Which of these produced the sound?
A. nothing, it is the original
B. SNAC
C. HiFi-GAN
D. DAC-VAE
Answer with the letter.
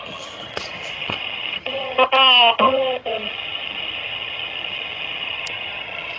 C